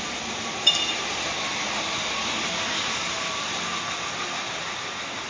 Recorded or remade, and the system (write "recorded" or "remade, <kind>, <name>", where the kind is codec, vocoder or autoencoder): recorded